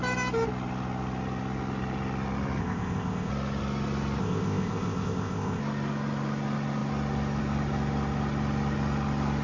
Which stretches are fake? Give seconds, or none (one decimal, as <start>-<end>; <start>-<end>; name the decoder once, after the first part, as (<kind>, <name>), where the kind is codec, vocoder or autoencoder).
2.6-3.3 (codec, ZipCodec); 4.2-5.6